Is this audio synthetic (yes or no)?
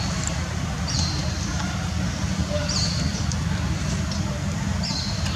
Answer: yes